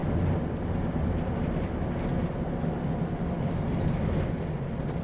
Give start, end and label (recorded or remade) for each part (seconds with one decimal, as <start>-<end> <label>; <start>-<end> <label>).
0.0-5.0 recorded